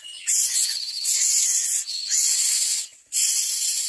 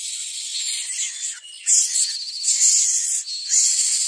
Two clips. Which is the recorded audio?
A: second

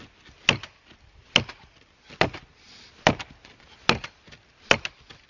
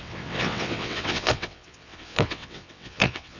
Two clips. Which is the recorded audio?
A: first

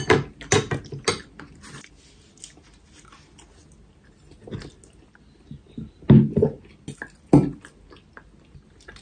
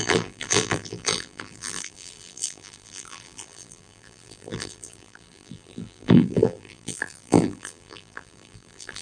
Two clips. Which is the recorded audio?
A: first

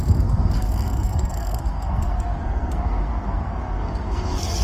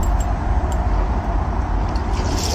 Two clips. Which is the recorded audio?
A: second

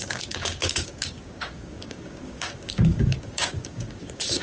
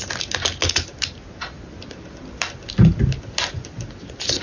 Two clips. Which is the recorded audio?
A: second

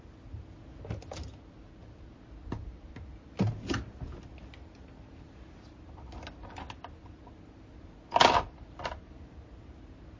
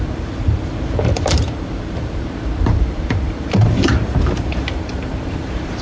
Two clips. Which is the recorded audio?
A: first